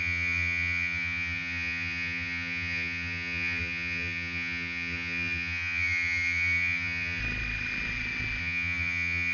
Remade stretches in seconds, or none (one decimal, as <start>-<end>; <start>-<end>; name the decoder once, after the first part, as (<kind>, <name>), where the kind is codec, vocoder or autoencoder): 0.0-7.2 (vocoder, HiFi-GAN); 8.4-9.3